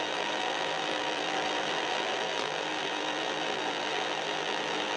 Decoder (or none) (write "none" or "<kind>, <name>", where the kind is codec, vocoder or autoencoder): vocoder, BigVGAN v2